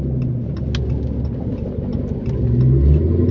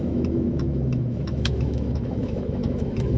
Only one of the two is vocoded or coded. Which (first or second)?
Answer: second